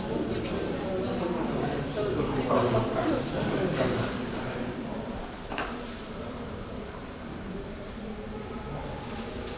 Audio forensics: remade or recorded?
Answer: remade